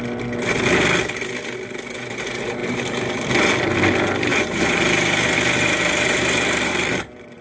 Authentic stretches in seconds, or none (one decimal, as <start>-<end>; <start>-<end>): 0.0-2.6; 3.5-4.3